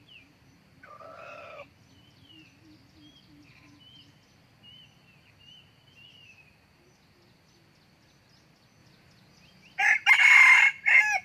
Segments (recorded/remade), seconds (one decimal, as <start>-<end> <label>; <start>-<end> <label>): 0.0-11.2 recorded